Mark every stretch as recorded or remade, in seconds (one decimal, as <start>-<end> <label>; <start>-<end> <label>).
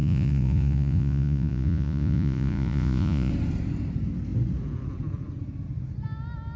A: 0.0-3.3 remade; 3.3-6.6 recorded